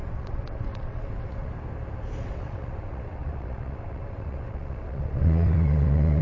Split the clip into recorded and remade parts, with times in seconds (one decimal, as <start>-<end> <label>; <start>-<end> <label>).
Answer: 0.0-1.5 remade; 1.5-2.2 recorded; 2.2-6.2 remade